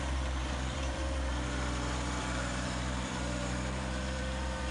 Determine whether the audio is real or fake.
fake